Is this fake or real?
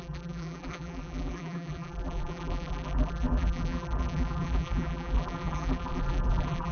fake